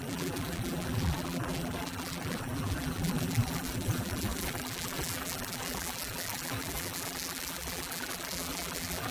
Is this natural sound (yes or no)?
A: no